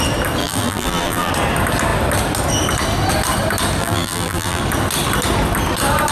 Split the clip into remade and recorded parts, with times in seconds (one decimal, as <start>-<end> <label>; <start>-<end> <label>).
0.0-0.4 recorded; 0.4-1.3 remade; 1.3-3.8 recorded; 3.8-4.6 remade; 4.6-6.1 recorded